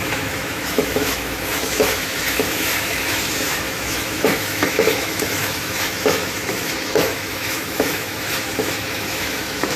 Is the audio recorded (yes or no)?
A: no